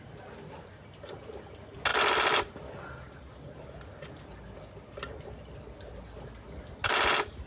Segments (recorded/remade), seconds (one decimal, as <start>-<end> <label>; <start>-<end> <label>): 0.0-7.5 recorded